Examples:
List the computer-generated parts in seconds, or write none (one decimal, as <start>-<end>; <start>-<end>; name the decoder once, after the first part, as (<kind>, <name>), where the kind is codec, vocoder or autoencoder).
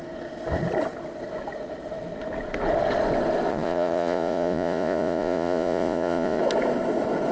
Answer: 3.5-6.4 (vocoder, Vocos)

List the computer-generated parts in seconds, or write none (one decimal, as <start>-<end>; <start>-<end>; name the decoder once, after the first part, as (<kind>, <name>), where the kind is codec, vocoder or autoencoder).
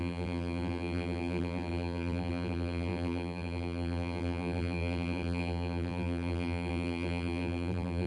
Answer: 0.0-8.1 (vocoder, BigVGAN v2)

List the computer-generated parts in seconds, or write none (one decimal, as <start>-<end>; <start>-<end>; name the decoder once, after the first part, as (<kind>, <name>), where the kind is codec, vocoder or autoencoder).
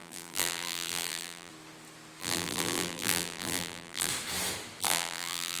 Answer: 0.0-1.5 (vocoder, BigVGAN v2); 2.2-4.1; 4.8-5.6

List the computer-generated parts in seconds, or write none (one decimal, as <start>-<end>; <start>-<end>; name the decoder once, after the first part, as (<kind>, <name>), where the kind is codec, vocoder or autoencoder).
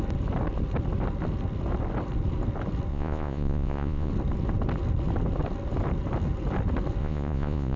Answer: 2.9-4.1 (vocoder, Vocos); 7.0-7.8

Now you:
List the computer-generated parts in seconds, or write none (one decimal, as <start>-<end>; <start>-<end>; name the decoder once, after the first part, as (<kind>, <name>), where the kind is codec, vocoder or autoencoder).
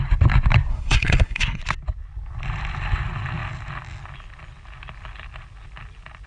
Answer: 0.7-1.6 (codec, SNAC)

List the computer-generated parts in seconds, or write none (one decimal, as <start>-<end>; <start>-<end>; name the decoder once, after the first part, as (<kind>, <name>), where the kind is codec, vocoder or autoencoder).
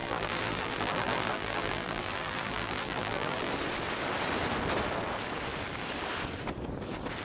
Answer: 0.0-3.5 (vocoder, BigVGAN v2)